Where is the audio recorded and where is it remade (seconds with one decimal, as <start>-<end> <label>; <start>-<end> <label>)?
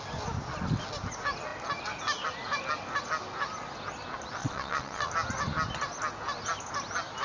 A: 0.0-4.4 recorded; 4.4-5.1 remade; 5.1-7.2 recorded